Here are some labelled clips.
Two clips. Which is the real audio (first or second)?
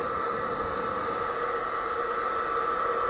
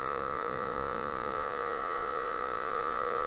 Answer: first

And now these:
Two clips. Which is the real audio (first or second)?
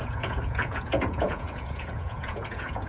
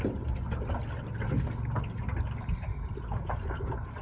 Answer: second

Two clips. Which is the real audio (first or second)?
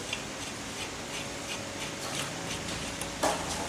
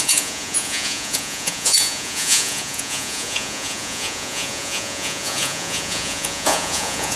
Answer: first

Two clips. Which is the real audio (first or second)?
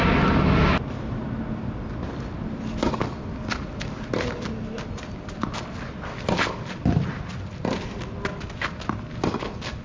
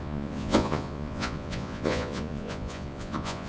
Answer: first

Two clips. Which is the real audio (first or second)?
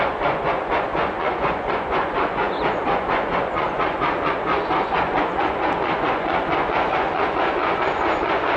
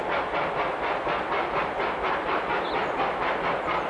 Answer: second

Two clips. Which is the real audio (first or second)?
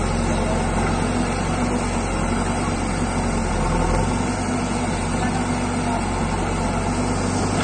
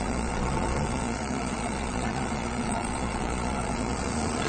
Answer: first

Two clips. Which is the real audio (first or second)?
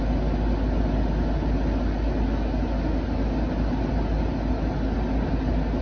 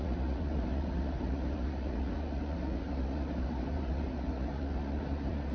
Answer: first